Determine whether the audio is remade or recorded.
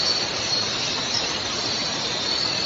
recorded